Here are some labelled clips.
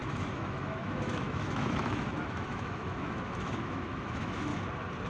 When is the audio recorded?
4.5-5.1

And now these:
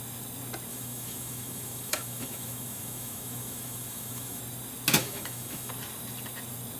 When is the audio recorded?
0.0-0.7; 4.4-5.0; 5.7-6.8

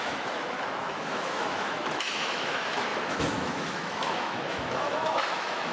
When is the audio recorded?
none

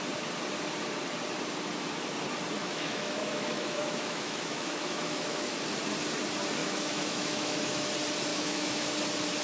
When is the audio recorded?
0.0-2.6; 5.5-6.6; 7.9-8.3; 8.9-9.4

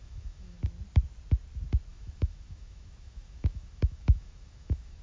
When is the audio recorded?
0.6-1.9

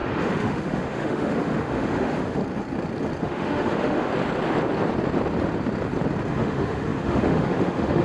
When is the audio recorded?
2.4-3.2; 4.1-6.3

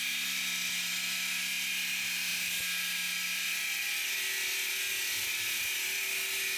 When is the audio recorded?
0.0-6.6